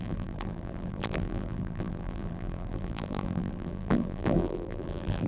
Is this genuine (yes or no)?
no